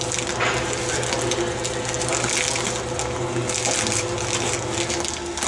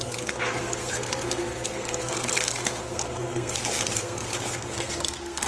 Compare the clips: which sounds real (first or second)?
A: first